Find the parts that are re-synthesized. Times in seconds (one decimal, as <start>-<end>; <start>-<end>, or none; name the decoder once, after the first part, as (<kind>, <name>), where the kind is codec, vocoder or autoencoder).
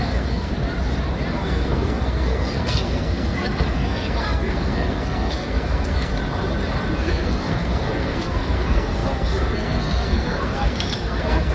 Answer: 0.0-0.5 (codec, SNAC); 1.3-6.1; 7.0-11.5